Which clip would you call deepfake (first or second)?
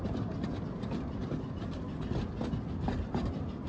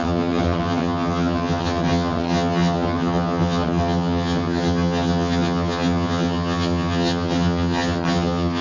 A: second